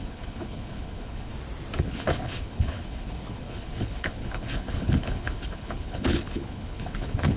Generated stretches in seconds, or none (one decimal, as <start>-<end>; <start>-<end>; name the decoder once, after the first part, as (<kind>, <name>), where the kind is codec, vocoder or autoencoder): 0.0-1.3 (codec, HILCodec); 1.8-7.4